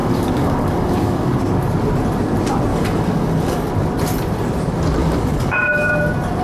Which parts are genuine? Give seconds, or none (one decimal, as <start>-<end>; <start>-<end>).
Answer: 1.4-2.7; 3.7-5.0; 5.9-6.4